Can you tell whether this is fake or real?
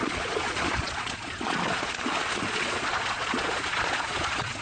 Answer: fake